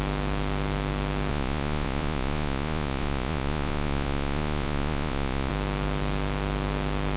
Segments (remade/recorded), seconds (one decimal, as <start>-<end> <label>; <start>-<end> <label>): 0.0-1.3 recorded; 1.3-5.5 remade; 5.5-7.2 recorded